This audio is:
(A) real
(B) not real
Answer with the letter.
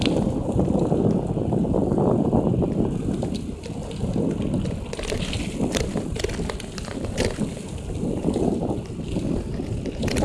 A